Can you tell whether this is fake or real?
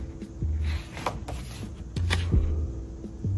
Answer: real